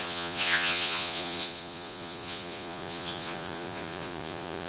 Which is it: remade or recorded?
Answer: remade